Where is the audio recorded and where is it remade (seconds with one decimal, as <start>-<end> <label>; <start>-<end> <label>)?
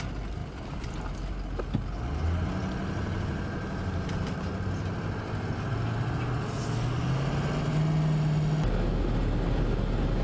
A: 0.0-10.2 recorded